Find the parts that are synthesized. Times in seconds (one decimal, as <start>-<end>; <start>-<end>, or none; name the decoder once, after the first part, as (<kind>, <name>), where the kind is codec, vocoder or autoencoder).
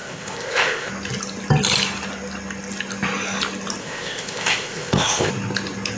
0.0-0.9 (codec, ZipCodec); 3.8-5.3